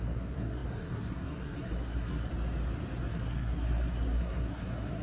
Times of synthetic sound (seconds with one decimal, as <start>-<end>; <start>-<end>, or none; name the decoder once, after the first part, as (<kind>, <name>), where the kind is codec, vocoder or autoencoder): 0.0-2.3 (codec, SNAC); 3.1-5.0